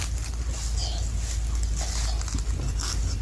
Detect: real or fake real